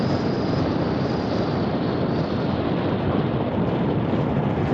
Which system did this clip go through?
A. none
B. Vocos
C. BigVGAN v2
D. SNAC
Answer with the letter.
A